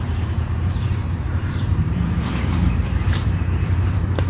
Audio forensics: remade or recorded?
remade